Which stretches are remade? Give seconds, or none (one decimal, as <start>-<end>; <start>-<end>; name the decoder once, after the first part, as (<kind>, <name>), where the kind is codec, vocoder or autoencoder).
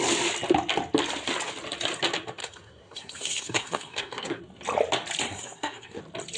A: 2.4-4.4 (codec, SNAC); 5.2-6.0